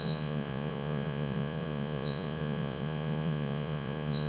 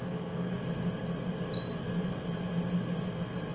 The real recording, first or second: second